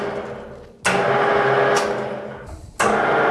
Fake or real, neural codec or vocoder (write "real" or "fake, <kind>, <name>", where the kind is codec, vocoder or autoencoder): real